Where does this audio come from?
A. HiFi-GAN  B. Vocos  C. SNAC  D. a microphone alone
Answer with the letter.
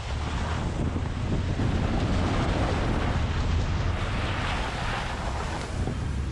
D